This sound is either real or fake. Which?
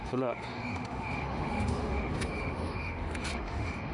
fake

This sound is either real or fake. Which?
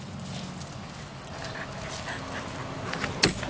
real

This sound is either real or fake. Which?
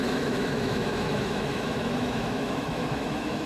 fake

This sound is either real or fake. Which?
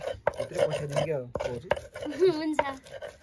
real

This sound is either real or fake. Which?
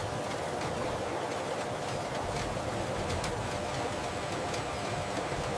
real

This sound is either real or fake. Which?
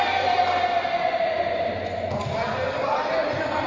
real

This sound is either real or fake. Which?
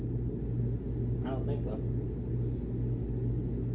real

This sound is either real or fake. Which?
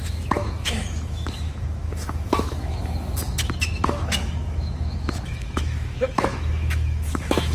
fake